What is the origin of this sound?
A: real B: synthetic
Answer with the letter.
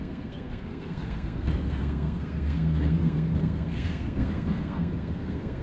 B